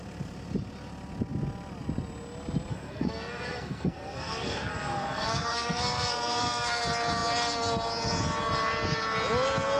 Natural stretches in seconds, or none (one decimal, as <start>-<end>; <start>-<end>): 0.0-2.7; 6.8-9.8